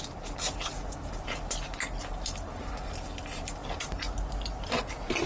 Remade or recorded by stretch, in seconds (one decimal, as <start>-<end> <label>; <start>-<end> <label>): 0.0-0.7 recorded; 0.7-1.4 remade; 1.4-5.3 recorded